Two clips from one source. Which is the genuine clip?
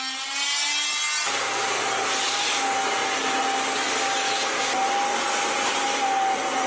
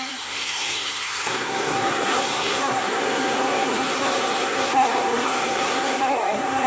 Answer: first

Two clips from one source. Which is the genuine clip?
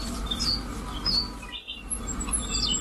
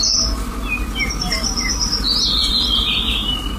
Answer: second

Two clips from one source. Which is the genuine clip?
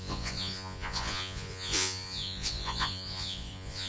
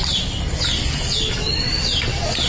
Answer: second